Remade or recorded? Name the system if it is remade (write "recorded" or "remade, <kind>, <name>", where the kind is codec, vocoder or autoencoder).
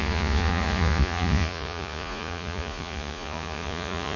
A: remade, vocoder, Vocos